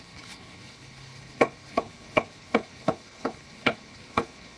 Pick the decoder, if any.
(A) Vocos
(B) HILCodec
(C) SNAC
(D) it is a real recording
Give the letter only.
B